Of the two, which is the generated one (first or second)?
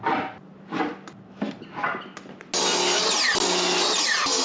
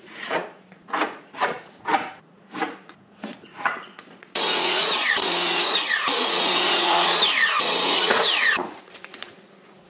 second